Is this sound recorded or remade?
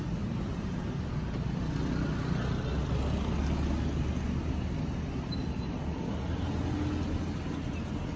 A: recorded